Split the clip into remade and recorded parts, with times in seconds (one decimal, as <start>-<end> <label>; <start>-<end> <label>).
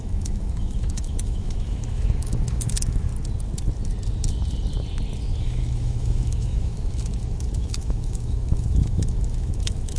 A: 0.0-3.1 remade; 3.1-5.4 recorded; 5.4-10.0 remade